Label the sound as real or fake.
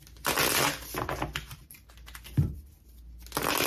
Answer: real